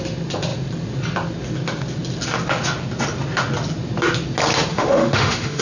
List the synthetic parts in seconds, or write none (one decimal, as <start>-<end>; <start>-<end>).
4.7-5.6